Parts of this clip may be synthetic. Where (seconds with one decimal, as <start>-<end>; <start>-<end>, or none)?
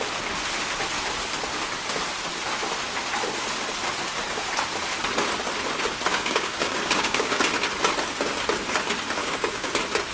6.1-7.4; 9.2-9.7